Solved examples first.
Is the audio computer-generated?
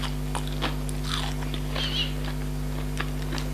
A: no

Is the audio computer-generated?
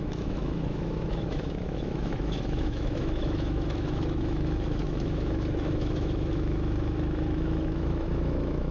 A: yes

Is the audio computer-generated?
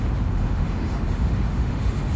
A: yes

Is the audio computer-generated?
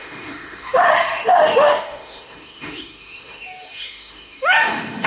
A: yes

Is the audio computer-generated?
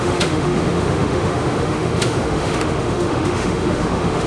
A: yes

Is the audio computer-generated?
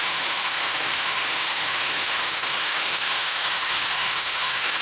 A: yes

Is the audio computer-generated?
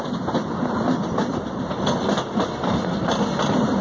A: no